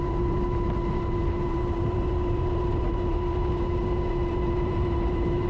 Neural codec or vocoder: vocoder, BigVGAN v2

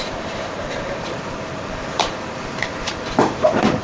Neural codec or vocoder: vocoder, BigVGAN v2